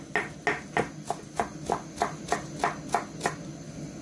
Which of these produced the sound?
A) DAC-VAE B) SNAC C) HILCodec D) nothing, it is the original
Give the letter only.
D